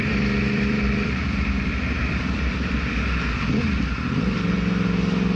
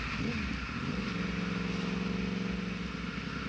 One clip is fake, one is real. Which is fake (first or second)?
first